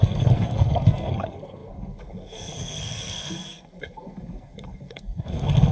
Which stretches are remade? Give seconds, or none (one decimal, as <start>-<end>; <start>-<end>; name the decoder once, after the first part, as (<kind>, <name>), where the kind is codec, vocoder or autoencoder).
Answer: 0.0-5.7 (codec, SNAC)